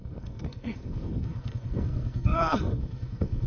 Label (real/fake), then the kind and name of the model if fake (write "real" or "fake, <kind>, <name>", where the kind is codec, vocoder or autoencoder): fake, codec, SNAC